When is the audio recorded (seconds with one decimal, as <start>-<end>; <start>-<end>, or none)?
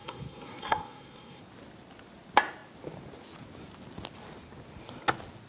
1.4-5.5